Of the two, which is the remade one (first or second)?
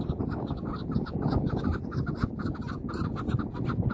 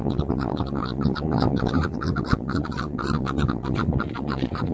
second